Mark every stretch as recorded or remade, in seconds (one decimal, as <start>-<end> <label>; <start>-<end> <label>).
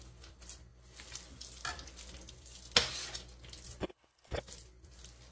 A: 0.0-3.8 recorded; 3.8-4.4 remade; 4.4-5.3 recorded